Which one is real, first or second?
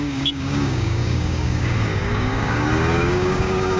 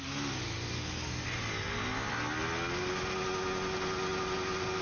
second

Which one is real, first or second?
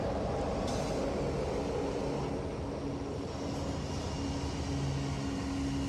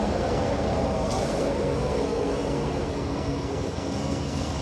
first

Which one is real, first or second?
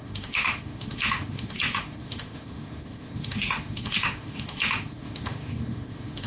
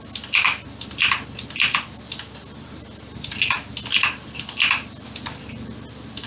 second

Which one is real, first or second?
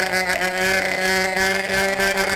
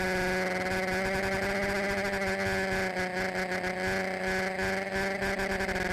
second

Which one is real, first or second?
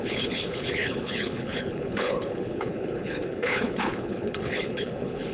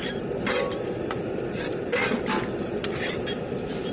second